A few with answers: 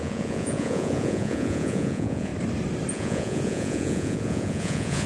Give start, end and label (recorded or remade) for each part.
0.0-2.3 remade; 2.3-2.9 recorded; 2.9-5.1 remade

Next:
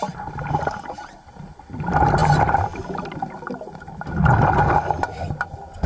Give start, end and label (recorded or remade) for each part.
0.0-5.9 recorded